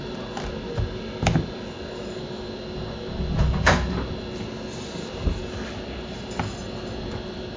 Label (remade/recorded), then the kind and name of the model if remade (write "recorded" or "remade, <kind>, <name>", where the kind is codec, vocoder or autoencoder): recorded